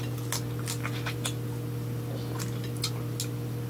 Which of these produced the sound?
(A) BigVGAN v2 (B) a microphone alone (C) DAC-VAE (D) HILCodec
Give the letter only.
B